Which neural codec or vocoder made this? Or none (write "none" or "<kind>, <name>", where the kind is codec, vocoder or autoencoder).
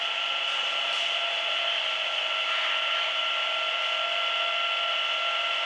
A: none